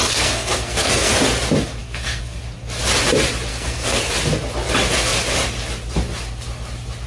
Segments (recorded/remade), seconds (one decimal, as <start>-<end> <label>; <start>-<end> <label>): 0.0-1.1 remade; 1.1-1.8 recorded; 1.8-2.4 remade; 2.4-3.5 recorded; 3.5-4.1 remade; 4.1-7.1 recorded